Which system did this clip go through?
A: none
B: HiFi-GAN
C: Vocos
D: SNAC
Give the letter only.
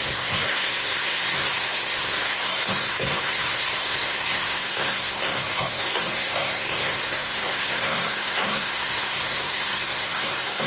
D